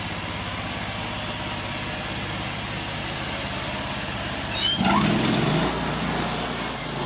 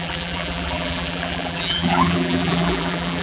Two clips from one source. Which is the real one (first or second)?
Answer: first